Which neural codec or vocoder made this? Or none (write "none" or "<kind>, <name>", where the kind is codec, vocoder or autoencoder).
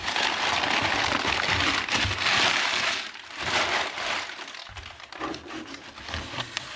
none